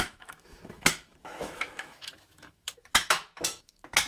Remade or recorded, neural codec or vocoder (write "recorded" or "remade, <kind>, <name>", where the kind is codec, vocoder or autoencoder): remade, autoencoder, DAC-VAE